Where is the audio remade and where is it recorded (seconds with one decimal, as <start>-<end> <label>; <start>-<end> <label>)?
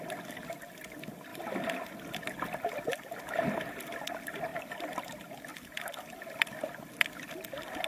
0.0-4.5 recorded; 4.5-5.0 remade; 5.0-7.9 recorded